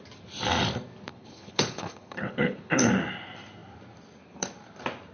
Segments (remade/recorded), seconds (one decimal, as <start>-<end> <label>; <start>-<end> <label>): 0.0-1.1 recorded; 1.1-2.9 remade; 2.9-5.1 recorded